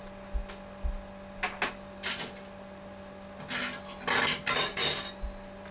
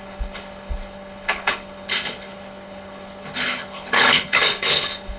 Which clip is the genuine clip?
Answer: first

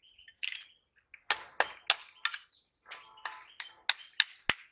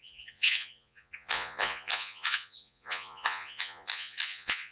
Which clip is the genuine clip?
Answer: first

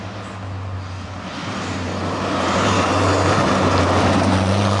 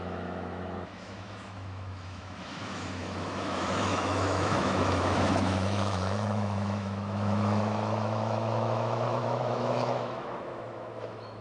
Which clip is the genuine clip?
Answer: first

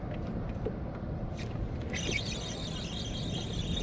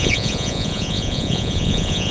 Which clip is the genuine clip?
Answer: first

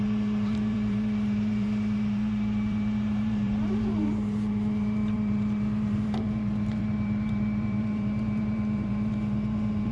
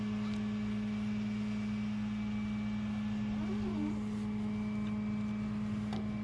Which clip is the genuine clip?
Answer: second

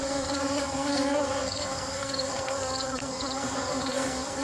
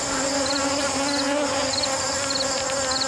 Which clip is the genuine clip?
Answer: second